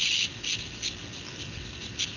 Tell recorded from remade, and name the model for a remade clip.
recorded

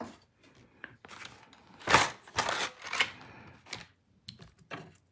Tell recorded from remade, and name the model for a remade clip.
recorded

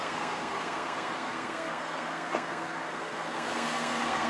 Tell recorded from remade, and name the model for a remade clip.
remade, codec, SNAC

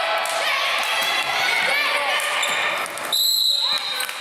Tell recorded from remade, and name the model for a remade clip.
recorded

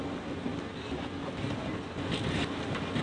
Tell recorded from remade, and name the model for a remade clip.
recorded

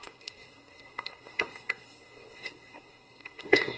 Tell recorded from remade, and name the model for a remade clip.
remade, codec, SNAC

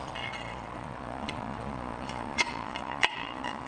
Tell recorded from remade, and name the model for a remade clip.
remade, vocoder, Vocos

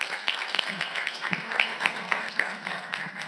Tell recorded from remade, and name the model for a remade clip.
remade, codec, SNAC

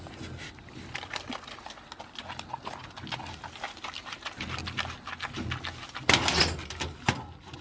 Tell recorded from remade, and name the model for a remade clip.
recorded